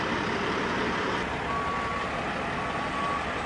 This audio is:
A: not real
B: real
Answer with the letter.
B